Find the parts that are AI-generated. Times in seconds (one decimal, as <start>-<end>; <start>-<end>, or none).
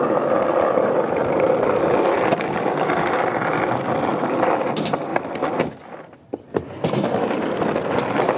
none